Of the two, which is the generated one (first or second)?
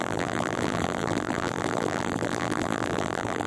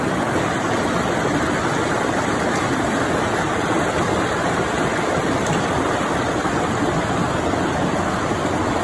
first